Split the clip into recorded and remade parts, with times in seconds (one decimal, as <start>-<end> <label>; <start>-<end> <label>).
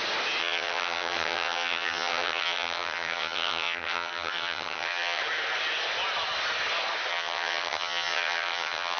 0.0-0.4 recorded; 0.4-5.2 remade; 5.2-7.1 recorded; 7.1-9.0 remade